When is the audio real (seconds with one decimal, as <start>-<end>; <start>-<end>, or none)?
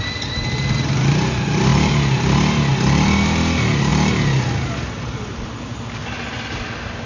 0.0-7.1